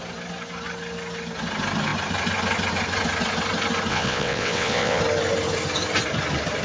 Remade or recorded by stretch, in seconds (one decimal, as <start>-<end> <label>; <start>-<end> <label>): 0.0-3.9 recorded; 3.9-5.0 remade; 5.0-6.6 recorded